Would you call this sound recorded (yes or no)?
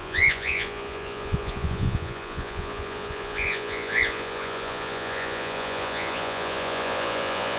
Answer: no